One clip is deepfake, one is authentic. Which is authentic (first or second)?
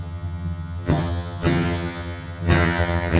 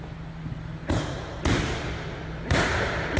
second